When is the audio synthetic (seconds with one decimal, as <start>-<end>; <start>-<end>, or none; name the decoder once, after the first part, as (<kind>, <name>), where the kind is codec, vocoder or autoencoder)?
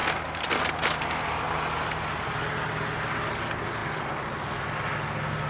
none